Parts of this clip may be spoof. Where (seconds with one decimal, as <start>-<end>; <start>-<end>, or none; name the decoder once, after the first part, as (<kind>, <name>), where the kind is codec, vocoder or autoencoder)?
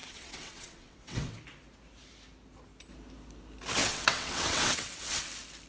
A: 0.0-1.4 (vocoder, WaveNeXt); 3.8-5.3